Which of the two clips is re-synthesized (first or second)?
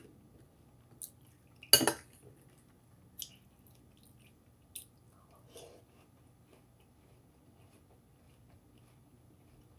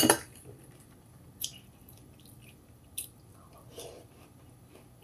second